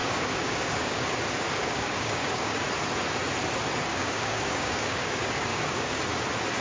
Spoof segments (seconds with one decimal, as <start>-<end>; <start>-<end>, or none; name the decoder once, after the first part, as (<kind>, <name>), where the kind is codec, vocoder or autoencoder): 0.0-1.1 (codec, DAC); 1.6-2.6; 3.9-6.0